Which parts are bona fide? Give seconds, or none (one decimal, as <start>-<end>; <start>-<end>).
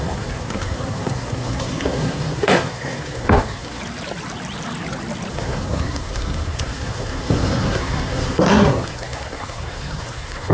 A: 3.8-5.3